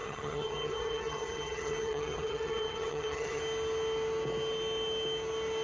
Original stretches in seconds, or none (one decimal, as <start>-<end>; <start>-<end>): 3.4-5.6